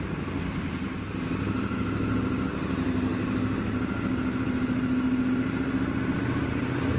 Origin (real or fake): real